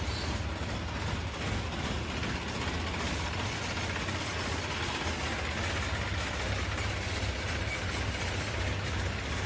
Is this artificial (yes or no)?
no